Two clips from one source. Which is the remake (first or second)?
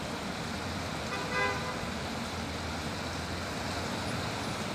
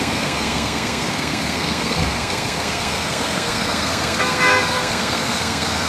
second